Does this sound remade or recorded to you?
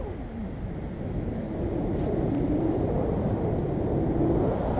recorded